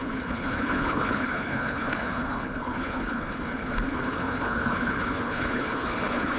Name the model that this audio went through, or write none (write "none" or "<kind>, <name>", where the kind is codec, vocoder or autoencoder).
codec, HILCodec